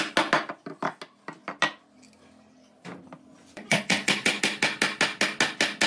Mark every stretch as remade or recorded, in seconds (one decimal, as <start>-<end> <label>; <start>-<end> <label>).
0.0-3.3 recorded; 3.3-4.4 remade; 4.4-5.9 recorded